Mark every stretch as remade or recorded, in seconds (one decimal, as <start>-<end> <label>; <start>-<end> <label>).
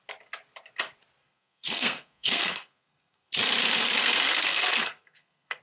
0.0-1.2 recorded; 1.2-3.3 remade; 3.3-4.0 recorded; 4.0-5.6 remade